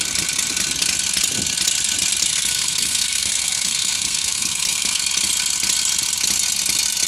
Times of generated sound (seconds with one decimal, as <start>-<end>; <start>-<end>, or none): 2.3-5.0